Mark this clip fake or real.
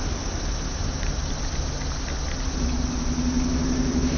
real